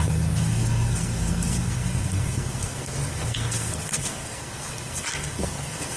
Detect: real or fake fake